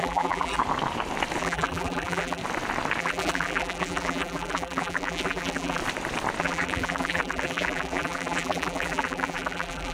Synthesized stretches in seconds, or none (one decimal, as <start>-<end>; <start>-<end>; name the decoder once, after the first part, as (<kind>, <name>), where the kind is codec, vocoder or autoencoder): 0.0-0.6 (vocoder, BigVGAN v2); 1.4-2.4; 3.0-5.8; 6.4-9.9